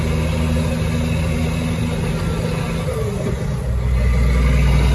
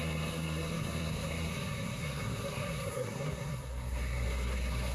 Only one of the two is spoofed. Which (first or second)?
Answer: second